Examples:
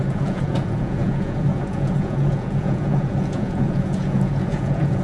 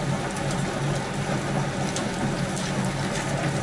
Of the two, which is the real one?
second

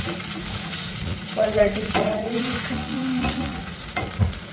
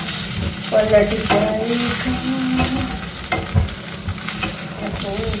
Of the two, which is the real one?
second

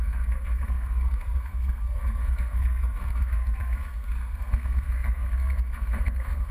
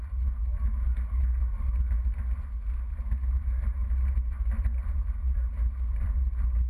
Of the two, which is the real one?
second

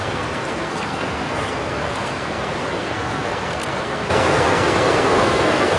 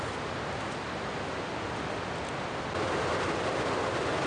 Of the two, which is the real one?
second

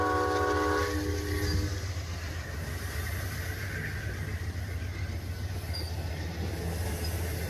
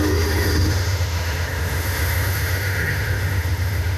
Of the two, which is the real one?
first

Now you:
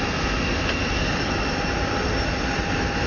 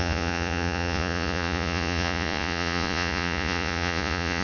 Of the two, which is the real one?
first